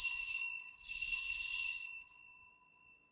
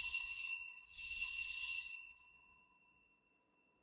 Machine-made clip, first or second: second